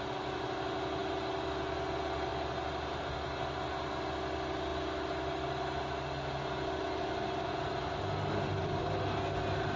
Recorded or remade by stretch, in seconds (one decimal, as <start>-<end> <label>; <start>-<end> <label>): 0.0-9.8 recorded